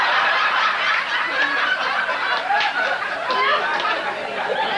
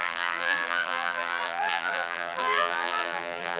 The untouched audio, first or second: first